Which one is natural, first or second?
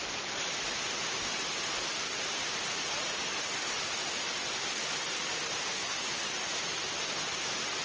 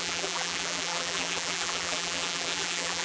first